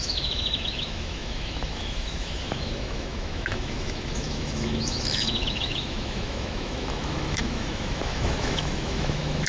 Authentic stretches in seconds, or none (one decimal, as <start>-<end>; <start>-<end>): none